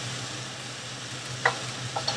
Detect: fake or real real